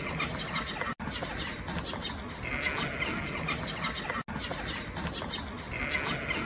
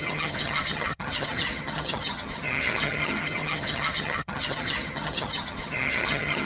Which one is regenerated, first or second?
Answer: second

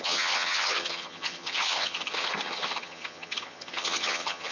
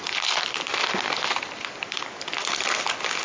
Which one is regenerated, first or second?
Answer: first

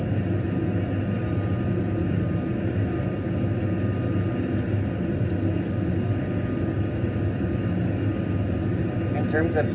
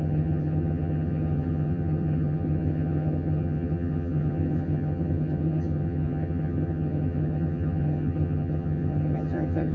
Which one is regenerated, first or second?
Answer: second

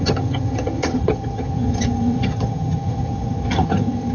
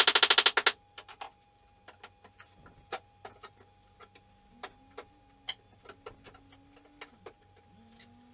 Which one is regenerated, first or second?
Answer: first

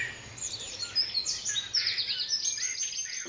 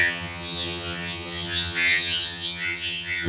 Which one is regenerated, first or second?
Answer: second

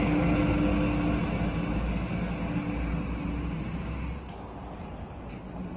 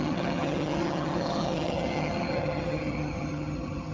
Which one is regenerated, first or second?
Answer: second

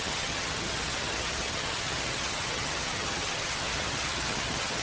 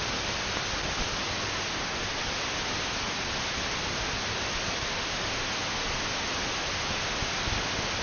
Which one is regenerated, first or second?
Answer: first